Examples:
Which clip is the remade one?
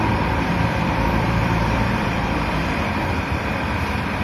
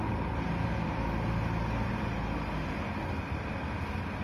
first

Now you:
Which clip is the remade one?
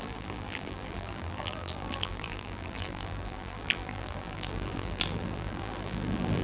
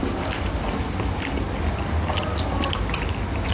first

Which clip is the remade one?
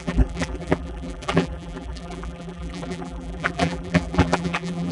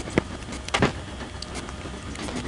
first